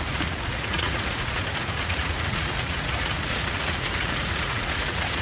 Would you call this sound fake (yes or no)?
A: yes